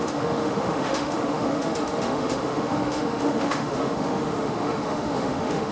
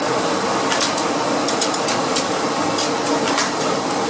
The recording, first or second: second